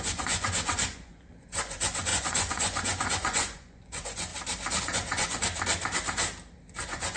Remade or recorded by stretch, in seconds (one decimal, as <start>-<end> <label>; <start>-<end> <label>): 0.0-4.3 remade; 4.3-4.8 recorded; 4.8-5.4 remade; 5.4-6.8 recorded; 6.8-7.2 remade